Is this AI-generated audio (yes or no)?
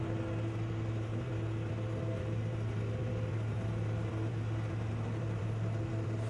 no